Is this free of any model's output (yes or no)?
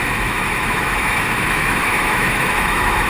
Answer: no